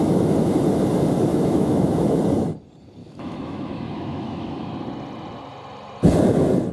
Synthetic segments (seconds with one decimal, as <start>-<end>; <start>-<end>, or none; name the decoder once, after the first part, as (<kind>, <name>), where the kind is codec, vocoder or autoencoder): 1.3-2.2 (autoencoder, DAC-VAE); 3.0-4.7